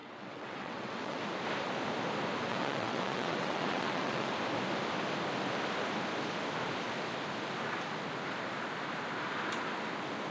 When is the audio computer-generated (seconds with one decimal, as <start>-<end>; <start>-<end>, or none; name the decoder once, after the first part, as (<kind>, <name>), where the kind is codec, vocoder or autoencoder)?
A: 0.0-1.2 (vocoder, WaveNeXt); 2.5-4.3